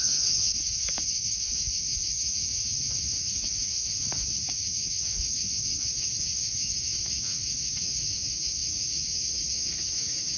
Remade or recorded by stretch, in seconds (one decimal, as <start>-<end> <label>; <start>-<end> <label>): 0.0-10.4 remade